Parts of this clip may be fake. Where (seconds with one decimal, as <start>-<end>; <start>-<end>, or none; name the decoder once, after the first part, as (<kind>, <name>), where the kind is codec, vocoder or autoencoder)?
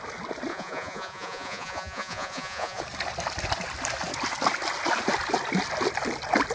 0.5-2.8 (vocoder, Vocos)